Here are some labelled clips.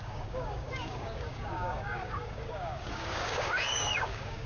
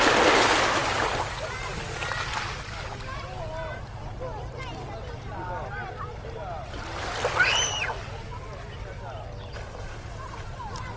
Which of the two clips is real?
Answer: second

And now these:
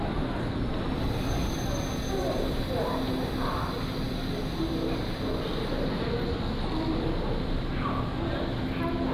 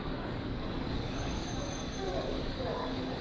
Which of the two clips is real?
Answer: first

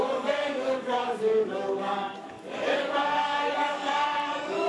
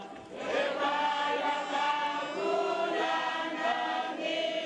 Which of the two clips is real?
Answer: second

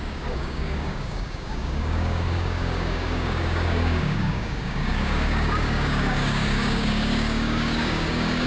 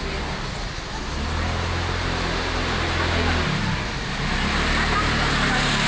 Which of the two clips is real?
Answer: second